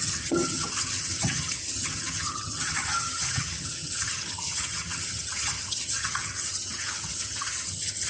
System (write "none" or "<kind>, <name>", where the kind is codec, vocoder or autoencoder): vocoder, HiFi-GAN